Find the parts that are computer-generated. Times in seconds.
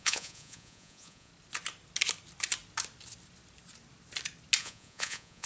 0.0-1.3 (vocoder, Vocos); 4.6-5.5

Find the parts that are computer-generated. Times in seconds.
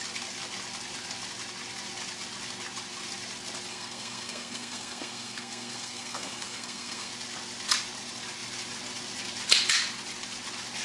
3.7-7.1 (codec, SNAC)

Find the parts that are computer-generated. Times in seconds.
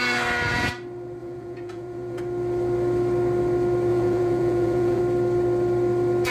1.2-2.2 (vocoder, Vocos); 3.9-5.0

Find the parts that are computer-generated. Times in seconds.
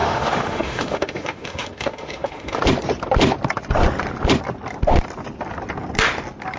0.0-2.6 (autoencoder, DAC-VAE)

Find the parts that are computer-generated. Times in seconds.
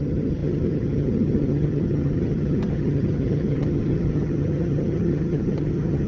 0.0-6.1 (vocoder, HiFi-GAN)